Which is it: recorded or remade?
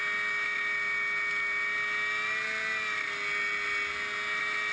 recorded